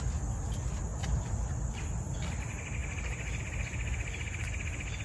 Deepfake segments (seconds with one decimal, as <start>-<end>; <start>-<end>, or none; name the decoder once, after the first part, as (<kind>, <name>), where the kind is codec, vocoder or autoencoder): none